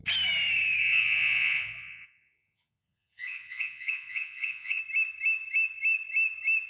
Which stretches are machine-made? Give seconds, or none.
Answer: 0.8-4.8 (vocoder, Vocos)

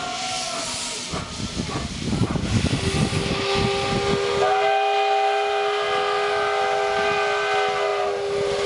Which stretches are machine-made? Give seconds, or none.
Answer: none

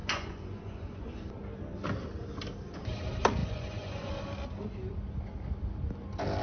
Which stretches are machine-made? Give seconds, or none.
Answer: 0.0-1.2 (vocoder, Vocos); 3.4-4.1

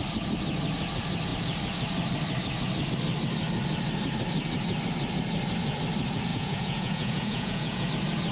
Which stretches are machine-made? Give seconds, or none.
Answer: 6.3-7.9 (vocoder, Vocos)

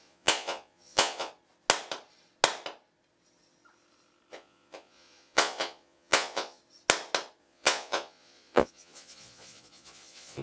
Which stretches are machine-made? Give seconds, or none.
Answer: 0.0-1.3 (vocoder, Vocos); 4.3-6.6; 7.4-10.4

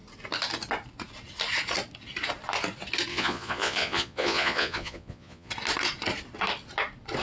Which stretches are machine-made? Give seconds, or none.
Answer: 3.1-5.5 (vocoder, Vocos)

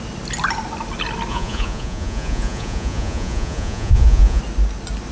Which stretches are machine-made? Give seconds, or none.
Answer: 1.3-4.4 (vocoder, Vocos)